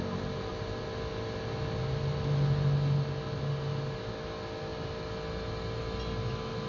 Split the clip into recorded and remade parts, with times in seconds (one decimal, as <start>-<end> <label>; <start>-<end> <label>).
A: 0.0-6.7 recorded